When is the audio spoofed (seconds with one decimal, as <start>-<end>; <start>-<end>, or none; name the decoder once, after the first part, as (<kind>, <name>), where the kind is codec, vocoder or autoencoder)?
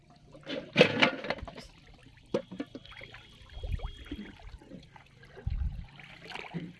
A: none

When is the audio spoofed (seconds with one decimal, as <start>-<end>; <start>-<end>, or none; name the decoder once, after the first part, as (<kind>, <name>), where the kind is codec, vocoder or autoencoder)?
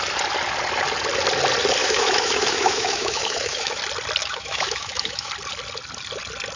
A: 1.8-3.8 (autoencoder, DAC-VAE); 4.2-5.3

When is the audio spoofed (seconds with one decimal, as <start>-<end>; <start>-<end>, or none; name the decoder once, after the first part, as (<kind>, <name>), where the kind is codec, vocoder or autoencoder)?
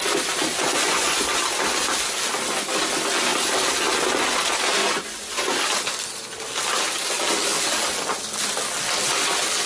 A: 0.5-1.2 (vocoder, Vocos); 4.8-5.6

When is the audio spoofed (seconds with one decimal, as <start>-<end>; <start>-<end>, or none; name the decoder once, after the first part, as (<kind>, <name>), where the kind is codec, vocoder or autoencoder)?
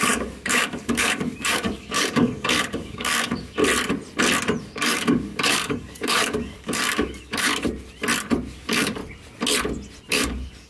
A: 0.0-3.6 (codec, DAC); 4.6-7.5; 8.5-9.0; 10.1-10.7